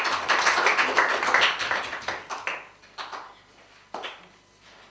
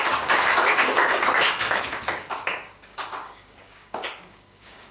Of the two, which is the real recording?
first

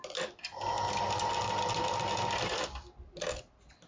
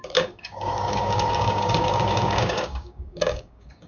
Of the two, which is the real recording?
first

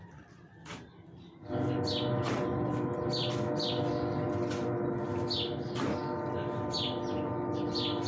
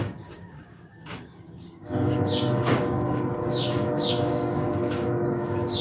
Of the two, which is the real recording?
first